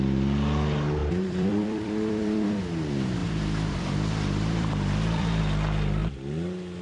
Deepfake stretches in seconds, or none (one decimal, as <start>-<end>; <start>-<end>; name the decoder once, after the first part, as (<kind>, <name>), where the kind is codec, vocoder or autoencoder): 1.0-2.6 (vocoder, BigVGAN v2); 3.2-5.4